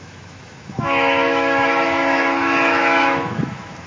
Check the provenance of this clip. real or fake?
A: fake